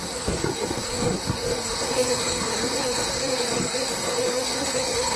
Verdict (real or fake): fake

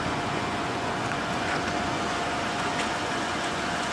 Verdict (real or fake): fake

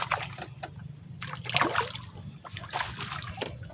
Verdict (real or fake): real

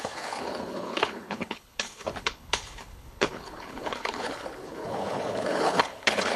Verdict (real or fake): fake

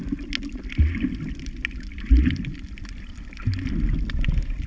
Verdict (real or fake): real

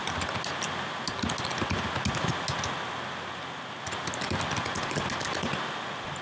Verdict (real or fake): real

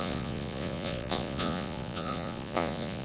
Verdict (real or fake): fake